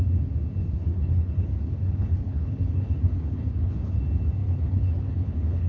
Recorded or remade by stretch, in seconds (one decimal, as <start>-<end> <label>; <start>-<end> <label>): 0.0-0.6 recorded; 0.6-4.0 remade; 4.0-4.4 recorded; 4.4-5.7 remade